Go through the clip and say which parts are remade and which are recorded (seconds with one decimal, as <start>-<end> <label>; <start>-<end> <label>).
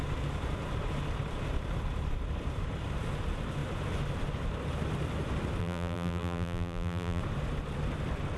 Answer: 0.0-5.6 recorded; 5.6-7.2 remade; 7.2-8.4 recorded